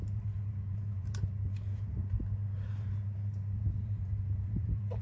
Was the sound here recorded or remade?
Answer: remade